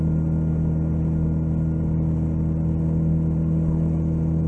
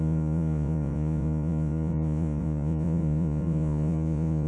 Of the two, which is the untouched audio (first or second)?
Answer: first